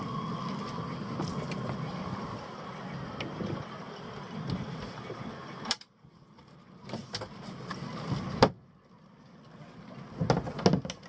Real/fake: real